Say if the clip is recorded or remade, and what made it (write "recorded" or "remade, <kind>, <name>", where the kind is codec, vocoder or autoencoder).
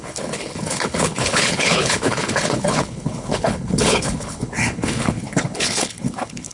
remade, codec, HILCodec